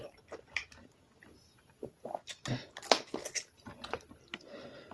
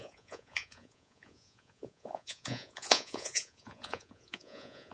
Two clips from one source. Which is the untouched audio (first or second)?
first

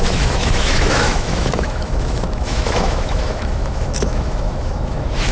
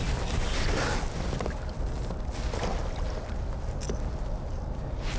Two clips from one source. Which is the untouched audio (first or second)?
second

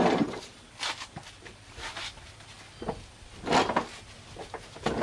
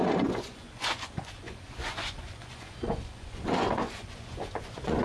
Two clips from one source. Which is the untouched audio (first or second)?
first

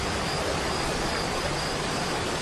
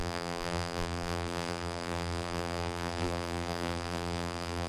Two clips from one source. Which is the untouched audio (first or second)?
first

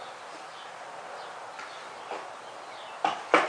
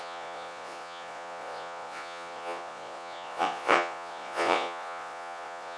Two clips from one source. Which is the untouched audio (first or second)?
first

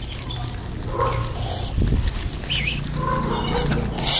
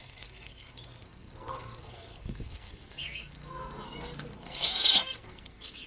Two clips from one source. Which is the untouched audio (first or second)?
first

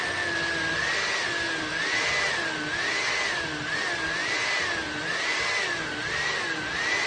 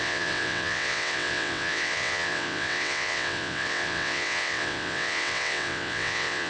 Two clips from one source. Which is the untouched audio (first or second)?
first